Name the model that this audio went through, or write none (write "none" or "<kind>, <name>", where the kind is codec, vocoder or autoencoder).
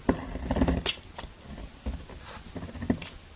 none